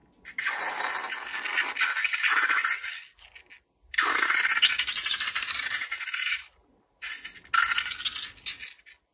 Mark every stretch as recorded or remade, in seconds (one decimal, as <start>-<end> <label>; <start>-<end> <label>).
0.0-0.5 remade; 0.5-5.0 recorded; 5.0-7.1 remade; 7.1-9.1 recorded